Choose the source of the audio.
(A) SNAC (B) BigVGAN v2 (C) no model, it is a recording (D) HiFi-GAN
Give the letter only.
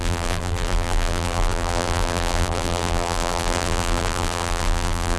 B